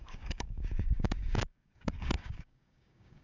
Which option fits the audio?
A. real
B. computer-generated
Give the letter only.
B